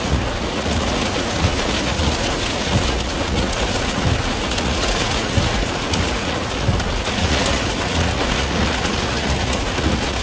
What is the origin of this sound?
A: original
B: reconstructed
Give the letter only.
B